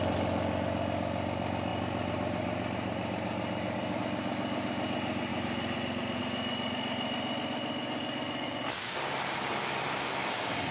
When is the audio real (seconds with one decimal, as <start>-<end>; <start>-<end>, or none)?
0.0-1.7; 4.0-5.3; 6.2-10.7